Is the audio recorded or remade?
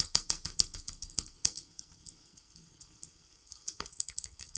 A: remade